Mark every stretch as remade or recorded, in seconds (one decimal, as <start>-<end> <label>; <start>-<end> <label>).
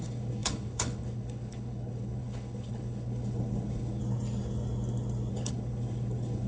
0.0-4.0 remade; 4.0-5.3 recorded; 5.3-6.5 remade